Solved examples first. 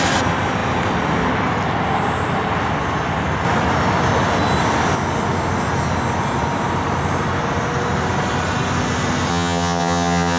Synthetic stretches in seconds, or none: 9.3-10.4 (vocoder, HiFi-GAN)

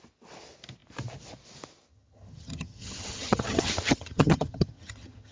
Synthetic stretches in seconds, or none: 1.9-5.3 (vocoder, HiFi-GAN)

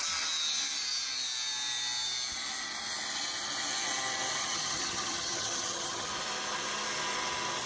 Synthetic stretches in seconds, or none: 4.4-6.1 (vocoder, HiFi-GAN)

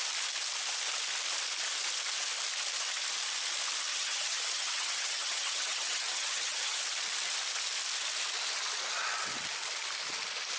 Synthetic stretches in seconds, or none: 3.9-6.8 (vocoder, HiFi-GAN)

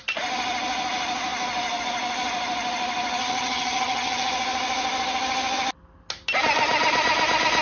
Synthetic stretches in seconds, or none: 3.2-4.3 (vocoder, HiFi-GAN)